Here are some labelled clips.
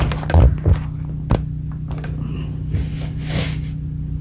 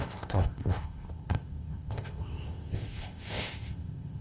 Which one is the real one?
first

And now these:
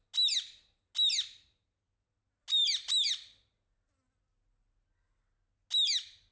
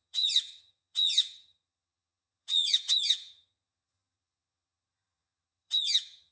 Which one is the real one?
first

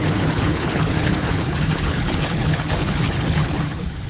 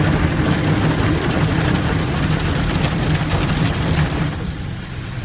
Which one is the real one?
second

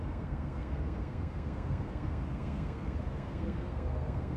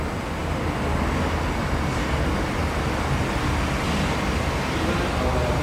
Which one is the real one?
second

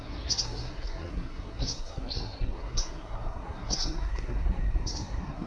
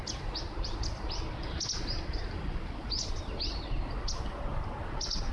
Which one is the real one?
second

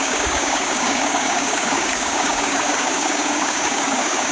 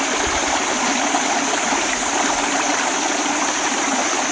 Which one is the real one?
second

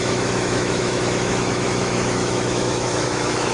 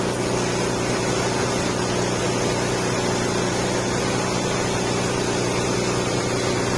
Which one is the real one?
second